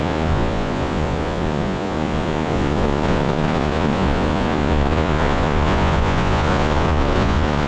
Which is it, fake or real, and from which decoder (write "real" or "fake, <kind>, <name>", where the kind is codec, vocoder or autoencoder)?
fake, vocoder, Vocos